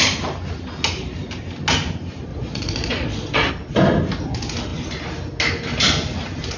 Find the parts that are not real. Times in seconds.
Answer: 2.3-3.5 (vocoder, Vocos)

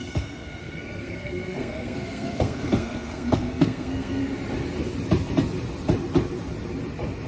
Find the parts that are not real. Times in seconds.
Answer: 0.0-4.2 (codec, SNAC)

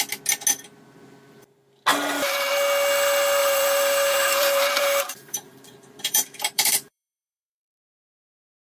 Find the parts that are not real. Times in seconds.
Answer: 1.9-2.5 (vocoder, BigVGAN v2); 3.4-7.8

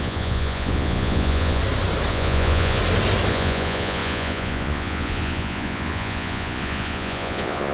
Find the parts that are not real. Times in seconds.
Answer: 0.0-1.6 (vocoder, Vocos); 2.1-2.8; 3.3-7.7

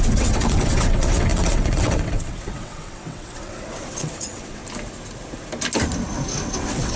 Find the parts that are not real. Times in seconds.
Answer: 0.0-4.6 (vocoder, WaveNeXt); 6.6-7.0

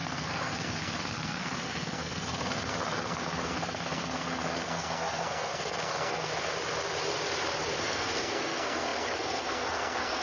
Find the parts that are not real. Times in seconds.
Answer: 0.0-6.3 (codec, SNAC); 7.8-10.2

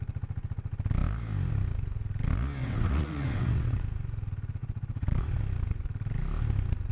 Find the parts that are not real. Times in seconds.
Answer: 2.6-3.8 (vocoder, WaveNeXt); 4.6-5.4